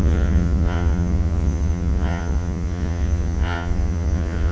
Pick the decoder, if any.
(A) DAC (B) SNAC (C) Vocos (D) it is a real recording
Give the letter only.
C